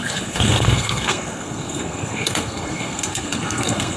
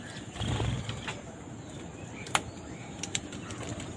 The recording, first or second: second